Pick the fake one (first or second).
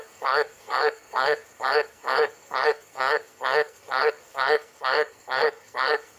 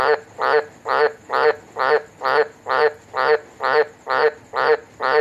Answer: first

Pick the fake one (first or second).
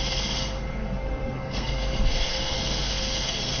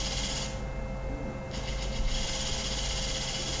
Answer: first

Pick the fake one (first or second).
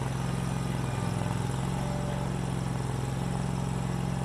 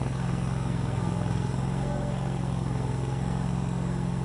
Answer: second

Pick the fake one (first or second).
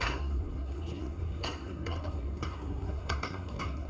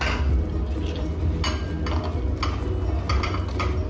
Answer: first